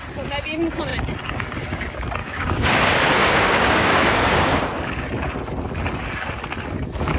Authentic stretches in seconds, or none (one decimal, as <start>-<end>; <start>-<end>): 0.0-2.2; 4.6-7.2